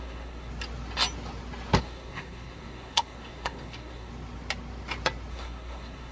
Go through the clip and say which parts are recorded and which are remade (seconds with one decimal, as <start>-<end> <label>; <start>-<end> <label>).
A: 0.0-0.5 remade; 0.5-1.8 recorded; 1.8-4.1 remade; 4.1-5.3 recorded; 5.3-6.1 remade